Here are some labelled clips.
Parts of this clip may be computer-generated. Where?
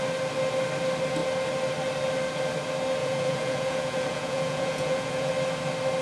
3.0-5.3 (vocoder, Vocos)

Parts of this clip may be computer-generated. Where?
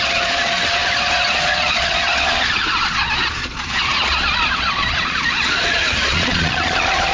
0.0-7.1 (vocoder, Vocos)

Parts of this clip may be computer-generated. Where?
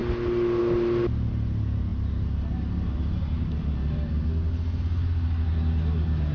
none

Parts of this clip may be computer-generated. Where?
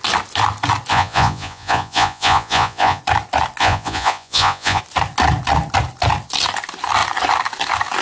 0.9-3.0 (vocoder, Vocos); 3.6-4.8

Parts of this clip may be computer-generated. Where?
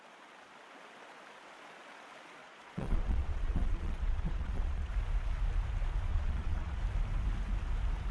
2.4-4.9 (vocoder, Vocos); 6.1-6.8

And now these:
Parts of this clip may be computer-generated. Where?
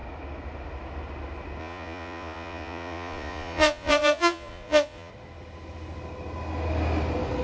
1.6-5.1 (vocoder, Vocos)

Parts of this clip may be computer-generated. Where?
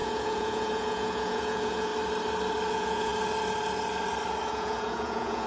0.0-1.9 (vocoder, Vocos); 2.7-3.1; 4.5-5.5